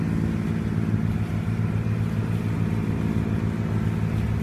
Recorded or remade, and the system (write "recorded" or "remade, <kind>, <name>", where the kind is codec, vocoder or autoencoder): recorded